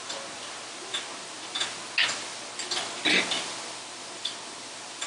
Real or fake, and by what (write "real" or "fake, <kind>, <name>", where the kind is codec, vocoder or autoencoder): real